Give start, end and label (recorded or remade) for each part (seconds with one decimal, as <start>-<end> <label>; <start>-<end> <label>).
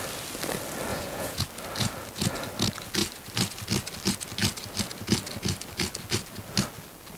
0.0-0.9 recorded; 0.9-1.4 remade; 1.4-7.2 recorded